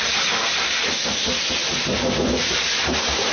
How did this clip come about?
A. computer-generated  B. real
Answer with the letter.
A